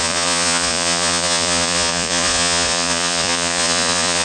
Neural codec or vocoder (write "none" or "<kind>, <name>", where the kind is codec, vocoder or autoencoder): vocoder, Vocos